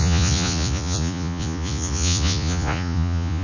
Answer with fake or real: fake